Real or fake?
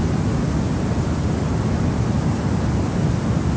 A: real